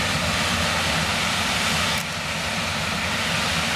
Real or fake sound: fake